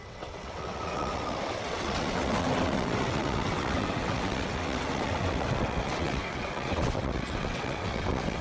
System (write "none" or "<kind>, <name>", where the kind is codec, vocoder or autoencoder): vocoder, WaveNeXt